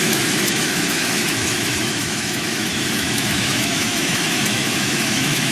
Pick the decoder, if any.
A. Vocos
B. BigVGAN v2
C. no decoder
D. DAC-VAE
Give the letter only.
D